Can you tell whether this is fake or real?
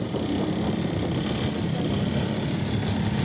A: real